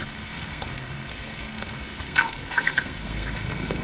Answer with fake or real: fake